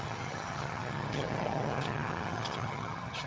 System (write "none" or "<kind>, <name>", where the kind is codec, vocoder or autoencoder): vocoder, HiFi-GAN